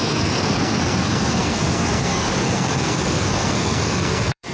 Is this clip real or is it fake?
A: fake